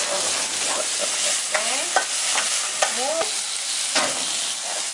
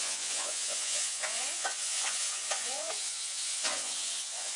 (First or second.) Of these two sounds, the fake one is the second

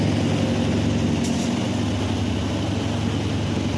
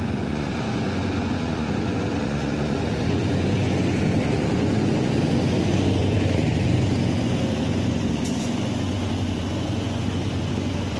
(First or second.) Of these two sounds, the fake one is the second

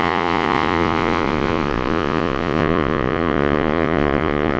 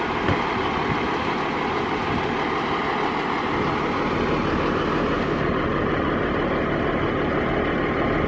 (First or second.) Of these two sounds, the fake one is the first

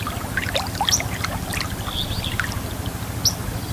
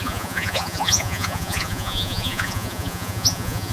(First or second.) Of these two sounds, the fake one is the second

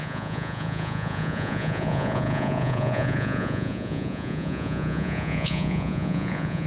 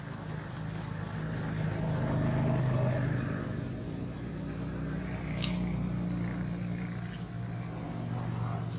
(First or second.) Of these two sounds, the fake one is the first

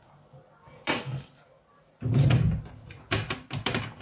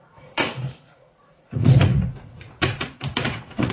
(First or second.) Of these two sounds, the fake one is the second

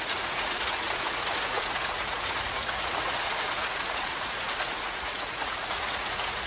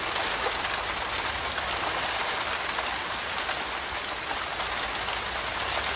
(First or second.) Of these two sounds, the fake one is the first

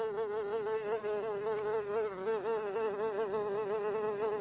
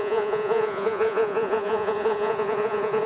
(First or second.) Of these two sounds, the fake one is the second